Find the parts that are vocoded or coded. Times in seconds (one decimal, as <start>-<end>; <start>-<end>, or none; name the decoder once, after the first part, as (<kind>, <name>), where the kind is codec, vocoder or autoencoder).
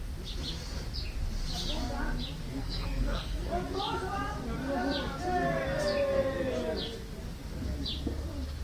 2.6-3.5 (codec, SNAC)